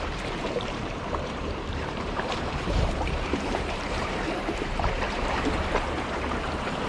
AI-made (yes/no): yes